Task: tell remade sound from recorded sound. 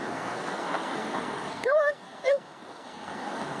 remade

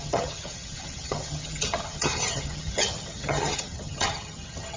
remade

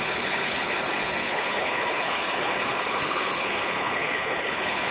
remade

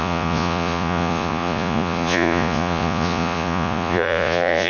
remade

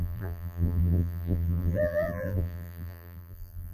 remade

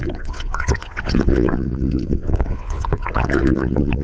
remade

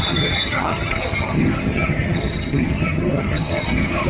remade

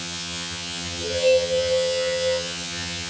remade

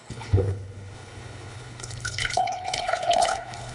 remade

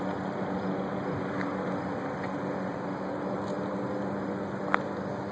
recorded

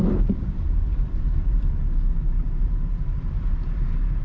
remade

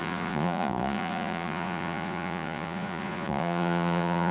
remade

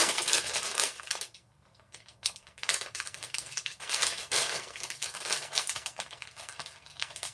remade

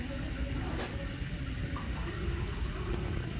recorded